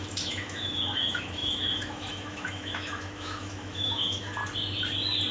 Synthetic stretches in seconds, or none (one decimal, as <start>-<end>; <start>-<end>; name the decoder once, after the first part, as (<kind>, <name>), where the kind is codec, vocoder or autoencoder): 0.0-4.4 (autoencoder, DAC-VAE)